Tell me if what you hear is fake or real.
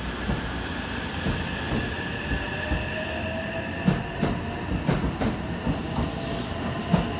real